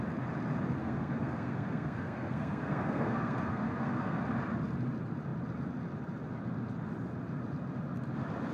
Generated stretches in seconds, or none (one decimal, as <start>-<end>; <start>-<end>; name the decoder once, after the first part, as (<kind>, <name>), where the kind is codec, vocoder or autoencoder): 0.8-4.2 (codec, SNAC)